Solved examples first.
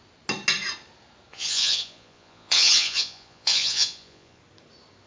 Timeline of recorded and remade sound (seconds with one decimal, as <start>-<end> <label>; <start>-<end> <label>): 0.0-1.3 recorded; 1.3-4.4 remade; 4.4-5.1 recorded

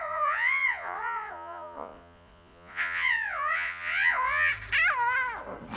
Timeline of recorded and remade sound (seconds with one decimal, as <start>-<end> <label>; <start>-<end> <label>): 0.0-4.5 remade; 4.5-5.8 recorded

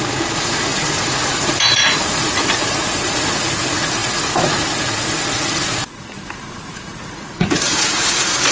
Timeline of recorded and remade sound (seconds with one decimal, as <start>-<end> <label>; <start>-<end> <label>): 0.0-8.5 remade